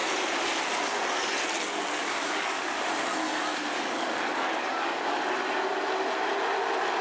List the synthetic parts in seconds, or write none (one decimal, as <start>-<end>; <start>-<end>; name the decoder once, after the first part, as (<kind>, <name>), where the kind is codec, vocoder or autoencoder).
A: 2.0-2.8 (codec, DAC); 3.7-5.2